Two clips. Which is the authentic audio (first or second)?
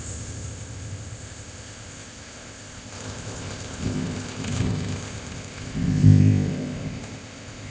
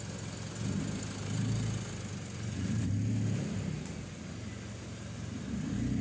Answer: second